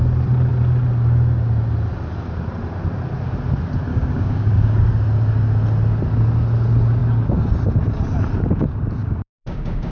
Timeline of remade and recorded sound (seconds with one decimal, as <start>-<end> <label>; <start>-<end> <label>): 0.0-3.9 recorded; 3.9-4.8 remade; 4.8-9.0 recorded; 9.0-9.9 remade

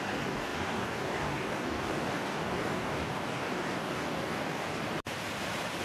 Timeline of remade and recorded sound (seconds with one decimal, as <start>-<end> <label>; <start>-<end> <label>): 0.0-4.8 remade; 4.8-5.8 recorded

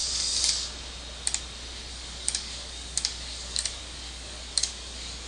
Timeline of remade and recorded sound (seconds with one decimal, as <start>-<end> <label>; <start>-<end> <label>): 0.0-0.5 remade; 0.5-1.9 recorded; 1.9-5.3 remade

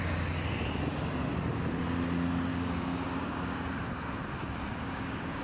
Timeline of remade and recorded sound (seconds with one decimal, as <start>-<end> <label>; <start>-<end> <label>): 0.0-2.5 recorded; 2.5-3.7 remade; 3.7-4.7 recorded; 4.7-5.4 remade

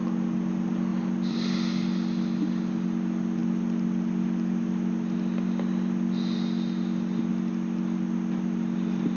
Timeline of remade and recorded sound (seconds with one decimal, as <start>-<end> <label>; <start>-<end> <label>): 0.0-9.2 recorded